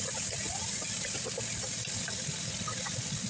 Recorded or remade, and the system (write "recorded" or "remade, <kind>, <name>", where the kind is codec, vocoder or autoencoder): recorded